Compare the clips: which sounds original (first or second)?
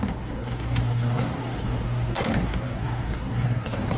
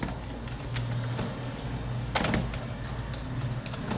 second